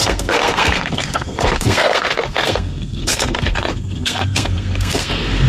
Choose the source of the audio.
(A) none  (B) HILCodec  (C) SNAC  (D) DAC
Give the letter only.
C